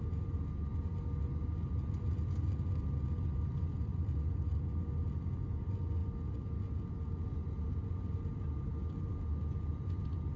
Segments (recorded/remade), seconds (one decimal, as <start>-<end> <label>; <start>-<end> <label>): 0.0-3.9 recorded; 3.9-4.7 remade; 4.7-10.4 recorded